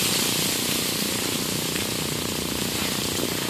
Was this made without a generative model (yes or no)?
yes